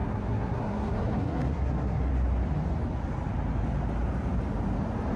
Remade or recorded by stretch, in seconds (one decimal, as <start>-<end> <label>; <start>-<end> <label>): 0.0-2.1 remade; 2.1-5.2 recorded